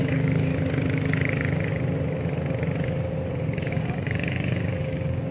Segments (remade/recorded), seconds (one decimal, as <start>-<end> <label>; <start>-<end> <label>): 0.0-0.5 remade; 0.5-3.7 recorded; 3.7-5.3 remade